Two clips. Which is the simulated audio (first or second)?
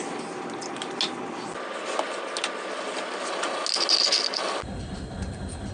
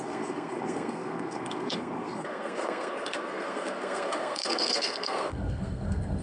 second